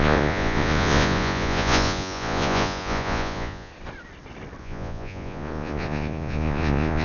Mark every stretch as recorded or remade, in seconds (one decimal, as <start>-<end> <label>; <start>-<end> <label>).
0.0-3.7 remade; 3.7-4.6 recorded; 4.6-7.0 remade